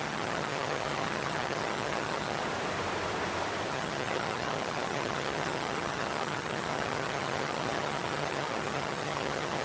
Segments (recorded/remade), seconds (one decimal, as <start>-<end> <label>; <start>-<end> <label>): 0.0-2.4 remade; 2.4-3.7 recorded; 3.7-9.6 remade